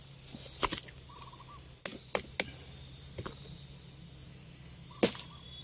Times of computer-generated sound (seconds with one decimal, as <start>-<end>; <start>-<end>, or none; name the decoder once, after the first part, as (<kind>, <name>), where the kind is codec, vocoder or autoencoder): none